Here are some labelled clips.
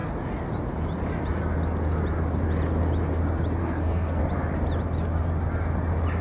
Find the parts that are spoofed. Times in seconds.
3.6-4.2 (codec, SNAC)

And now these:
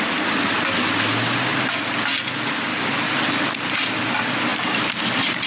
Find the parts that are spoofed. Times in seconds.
4.5-5.5 (vocoder, BigVGAN v2)

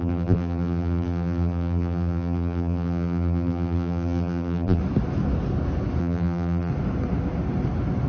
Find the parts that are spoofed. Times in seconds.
0.0-4.8 (vocoder, BigVGAN v2); 6.0-6.7

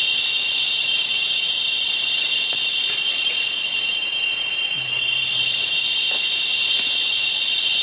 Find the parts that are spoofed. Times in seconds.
2.2-5.0 (vocoder, Vocos); 7.3-7.8

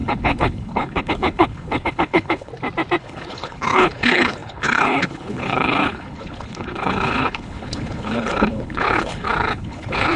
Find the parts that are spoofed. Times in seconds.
0.0-2.5 (codec, HILCodec); 3.0-10.2

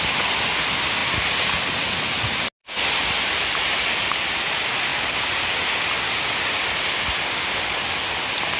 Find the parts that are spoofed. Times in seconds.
none